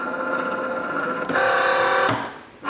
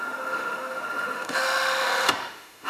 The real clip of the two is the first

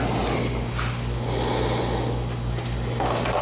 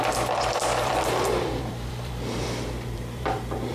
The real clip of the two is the first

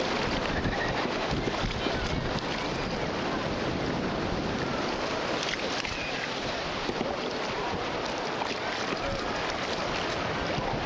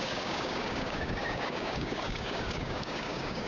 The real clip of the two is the first